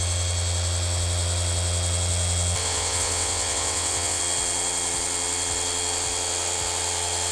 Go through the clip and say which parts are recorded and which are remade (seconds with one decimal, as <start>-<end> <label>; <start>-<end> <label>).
0.0-2.6 recorded; 2.6-4.2 remade; 4.2-7.3 recorded